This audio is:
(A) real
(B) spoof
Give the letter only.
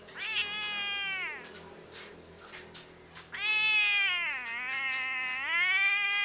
A